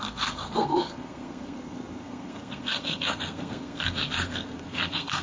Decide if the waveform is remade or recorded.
remade